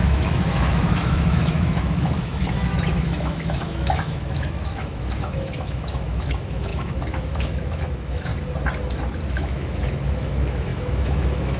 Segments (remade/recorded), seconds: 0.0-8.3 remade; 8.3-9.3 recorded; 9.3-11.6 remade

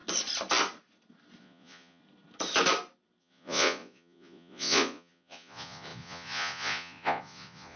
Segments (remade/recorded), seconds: 0.0-1.4 recorded; 1.4-2.0 remade; 2.0-3.2 recorded; 3.2-7.8 remade